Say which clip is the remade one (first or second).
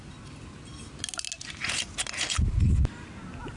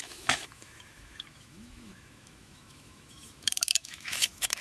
second